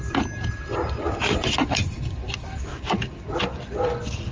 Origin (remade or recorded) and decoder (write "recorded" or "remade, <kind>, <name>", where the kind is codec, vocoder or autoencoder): recorded